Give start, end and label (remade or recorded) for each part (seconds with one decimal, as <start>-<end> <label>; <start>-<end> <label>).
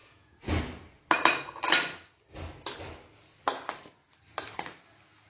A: 0.0-0.6 remade; 0.6-5.3 recorded